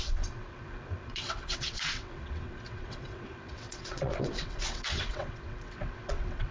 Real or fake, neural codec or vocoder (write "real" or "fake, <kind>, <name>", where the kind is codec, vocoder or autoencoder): fake, vocoder, WaveNeXt